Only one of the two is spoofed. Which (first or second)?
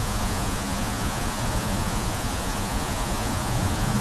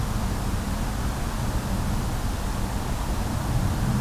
first